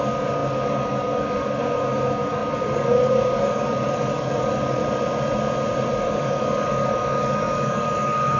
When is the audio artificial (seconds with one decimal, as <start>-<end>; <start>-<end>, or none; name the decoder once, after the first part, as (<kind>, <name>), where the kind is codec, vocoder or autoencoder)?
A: 0.0-4.8 (codec, DAC); 5.9-8.4